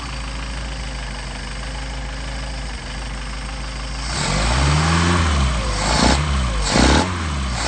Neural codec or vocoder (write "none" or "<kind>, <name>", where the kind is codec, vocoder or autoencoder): none